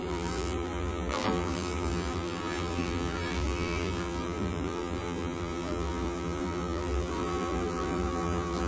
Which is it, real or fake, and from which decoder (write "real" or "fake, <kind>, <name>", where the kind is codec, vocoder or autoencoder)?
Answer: fake, vocoder, BigVGAN v2